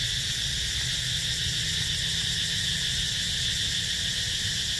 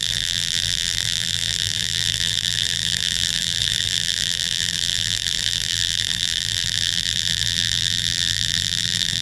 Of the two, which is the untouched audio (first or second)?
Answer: first